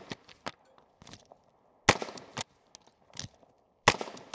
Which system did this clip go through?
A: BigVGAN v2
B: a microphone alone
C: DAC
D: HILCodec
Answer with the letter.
B